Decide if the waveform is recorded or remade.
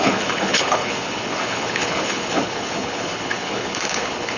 remade